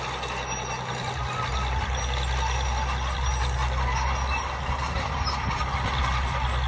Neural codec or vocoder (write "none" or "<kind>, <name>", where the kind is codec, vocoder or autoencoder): none